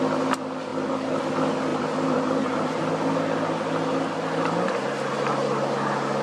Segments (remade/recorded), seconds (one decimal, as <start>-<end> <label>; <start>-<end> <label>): 0.0-1.7 recorded; 1.7-2.9 remade; 2.9-6.2 recorded